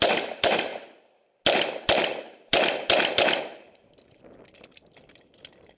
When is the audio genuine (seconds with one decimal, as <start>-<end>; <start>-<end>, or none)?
0.0-5.8